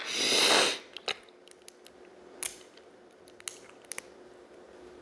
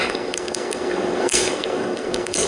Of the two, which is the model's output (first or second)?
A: second